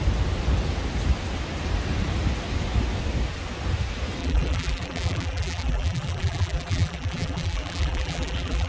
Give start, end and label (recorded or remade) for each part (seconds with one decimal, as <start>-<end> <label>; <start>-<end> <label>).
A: 0.0-4.2 recorded; 4.2-8.7 remade